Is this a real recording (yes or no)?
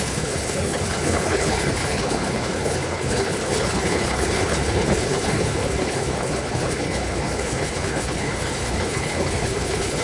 no